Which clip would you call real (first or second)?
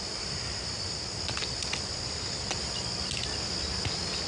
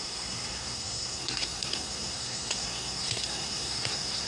first